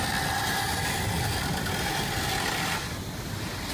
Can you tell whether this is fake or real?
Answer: real